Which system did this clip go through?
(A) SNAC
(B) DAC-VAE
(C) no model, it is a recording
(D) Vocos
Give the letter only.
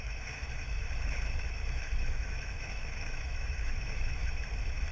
B